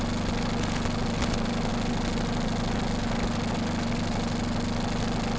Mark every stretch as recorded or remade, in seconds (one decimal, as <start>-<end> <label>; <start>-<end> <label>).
0.0-5.4 recorded